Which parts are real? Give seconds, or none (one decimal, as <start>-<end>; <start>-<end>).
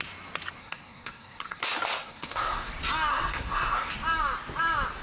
0.0-0.6; 1.6-2.0; 2.7-3.1; 3.9-5.0